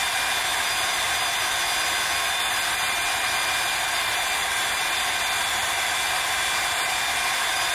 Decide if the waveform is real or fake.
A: real